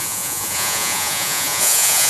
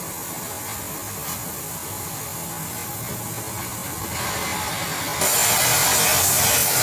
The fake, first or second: first